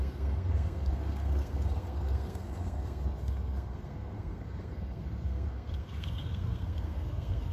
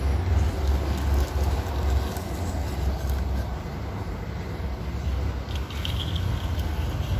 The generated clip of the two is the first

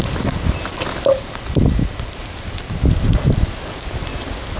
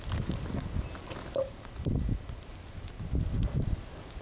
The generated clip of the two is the first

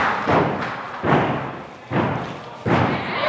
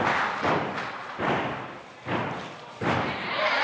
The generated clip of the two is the second